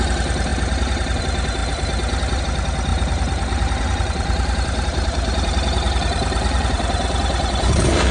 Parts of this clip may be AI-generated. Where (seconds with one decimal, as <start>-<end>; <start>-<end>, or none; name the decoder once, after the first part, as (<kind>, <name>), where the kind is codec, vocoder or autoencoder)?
0.5-1.2 (vocoder, BigVGAN v2); 2.9-8.1